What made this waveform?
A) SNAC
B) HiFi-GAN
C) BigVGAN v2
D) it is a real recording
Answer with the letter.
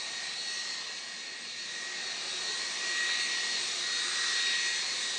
D